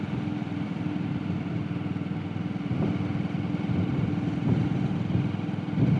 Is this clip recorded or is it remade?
recorded